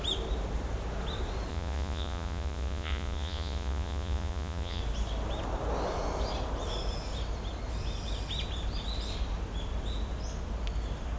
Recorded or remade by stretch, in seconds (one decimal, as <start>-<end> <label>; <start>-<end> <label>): 0.0-1.5 recorded; 1.5-4.8 remade; 4.8-11.2 recorded